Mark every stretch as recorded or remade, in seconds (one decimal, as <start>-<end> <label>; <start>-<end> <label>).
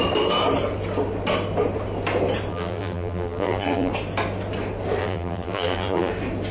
0.0-2.5 recorded; 2.5-3.9 remade; 3.9-5.0 recorded; 5.0-6.1 remade; 6.1-6.5 recorded